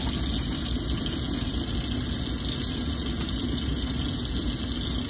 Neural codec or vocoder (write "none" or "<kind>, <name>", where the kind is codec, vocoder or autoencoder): none